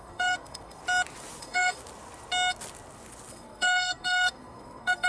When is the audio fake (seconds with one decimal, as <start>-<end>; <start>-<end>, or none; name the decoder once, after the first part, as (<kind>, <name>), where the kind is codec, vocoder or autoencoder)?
0.0-0.8 (codec, SNAC); 1.4-1.8; 3.3-5.1